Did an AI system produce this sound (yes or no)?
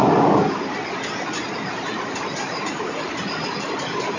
no